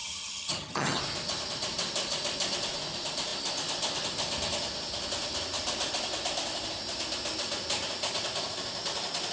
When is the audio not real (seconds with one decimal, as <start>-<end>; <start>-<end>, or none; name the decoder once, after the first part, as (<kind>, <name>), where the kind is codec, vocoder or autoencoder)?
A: 0.0-1.0 (vocoder, HiFi-GAN)